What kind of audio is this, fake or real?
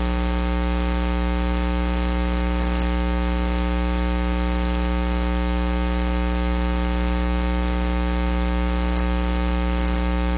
real